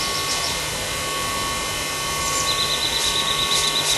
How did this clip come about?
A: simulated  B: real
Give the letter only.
B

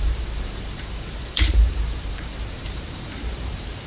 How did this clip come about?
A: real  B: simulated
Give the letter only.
B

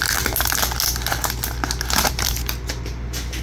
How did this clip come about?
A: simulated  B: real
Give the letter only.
B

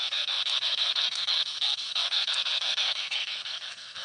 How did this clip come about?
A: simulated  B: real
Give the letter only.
A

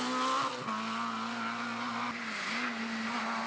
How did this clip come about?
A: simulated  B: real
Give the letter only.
B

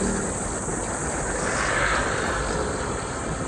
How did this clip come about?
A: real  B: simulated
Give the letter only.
A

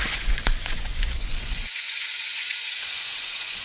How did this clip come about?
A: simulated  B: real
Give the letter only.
A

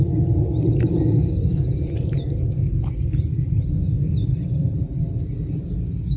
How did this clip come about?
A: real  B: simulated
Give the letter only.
A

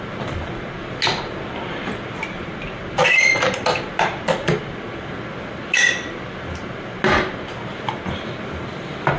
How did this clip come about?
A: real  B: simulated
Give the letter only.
A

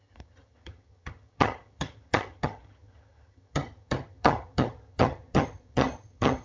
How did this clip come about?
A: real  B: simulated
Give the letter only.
B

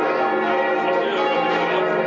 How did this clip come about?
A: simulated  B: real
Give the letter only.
B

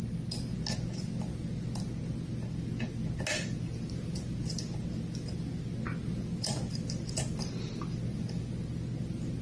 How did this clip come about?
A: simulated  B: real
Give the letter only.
B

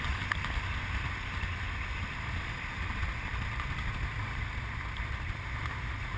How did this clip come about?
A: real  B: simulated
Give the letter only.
A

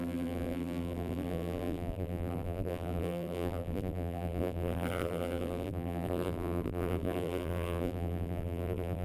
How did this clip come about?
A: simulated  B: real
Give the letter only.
A